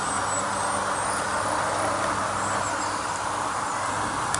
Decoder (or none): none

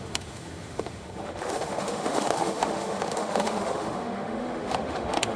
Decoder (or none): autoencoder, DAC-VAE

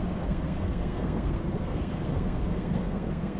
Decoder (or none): codec, SNAC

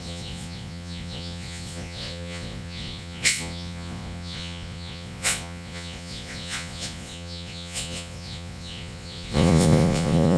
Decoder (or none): vocoder, Vocos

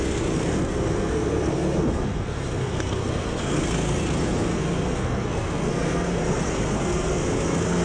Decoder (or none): codec, SNAC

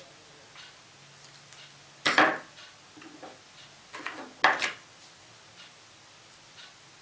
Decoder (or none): none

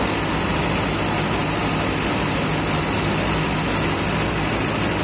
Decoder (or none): none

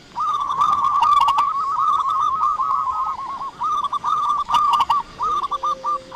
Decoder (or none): codec, DAC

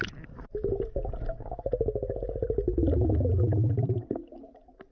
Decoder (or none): none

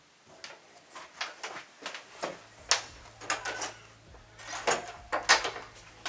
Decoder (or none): none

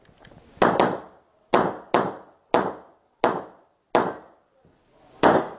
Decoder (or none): none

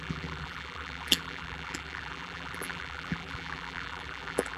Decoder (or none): vocoder, BigVGAN v2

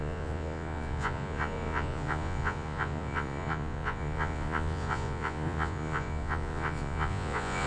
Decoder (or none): vocoder, Vocos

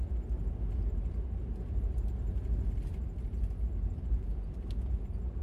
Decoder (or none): none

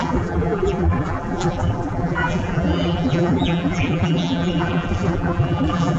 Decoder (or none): vocoder, BigVGAN v2